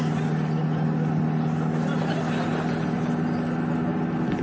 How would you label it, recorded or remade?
recorded